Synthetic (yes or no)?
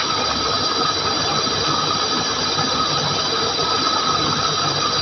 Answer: no